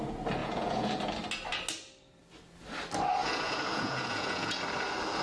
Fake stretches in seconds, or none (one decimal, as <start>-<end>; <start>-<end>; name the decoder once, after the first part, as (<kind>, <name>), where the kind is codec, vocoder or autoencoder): 0.4-1.0 (vocoder, Vocos); 3.2-4.6